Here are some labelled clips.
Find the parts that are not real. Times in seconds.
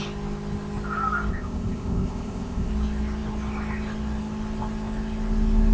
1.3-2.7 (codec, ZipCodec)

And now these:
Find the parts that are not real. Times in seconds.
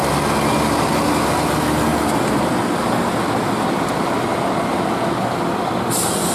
none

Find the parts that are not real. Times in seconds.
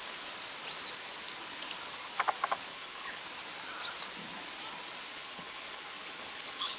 2.7-3.2 (codec, HILCodec); 5.1-6.8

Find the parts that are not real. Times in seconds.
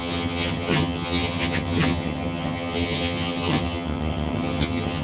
0.0-5.0 (vocoder, HiFi-GAN)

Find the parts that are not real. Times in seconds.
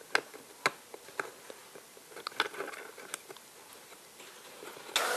none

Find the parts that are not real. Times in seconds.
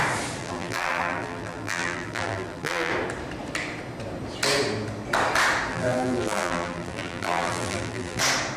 0.4-2.9 (vocoder, BigVGAN v2); 5.7-8.2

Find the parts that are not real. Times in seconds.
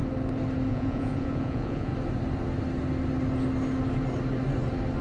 0.7-1.9 (vocoder, Vocos)